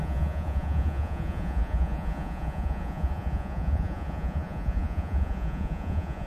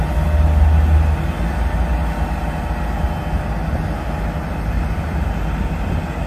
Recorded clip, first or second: second